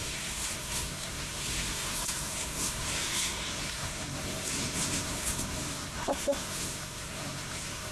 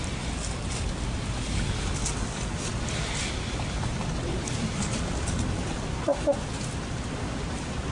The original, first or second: second